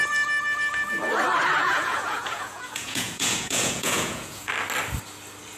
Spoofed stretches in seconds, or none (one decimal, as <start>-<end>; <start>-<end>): 1.6-4.5